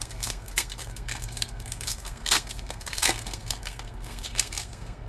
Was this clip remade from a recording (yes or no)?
yes